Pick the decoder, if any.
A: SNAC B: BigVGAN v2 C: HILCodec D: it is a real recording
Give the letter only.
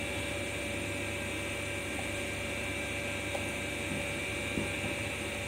D